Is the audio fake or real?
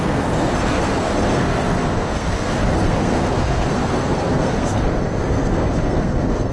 fake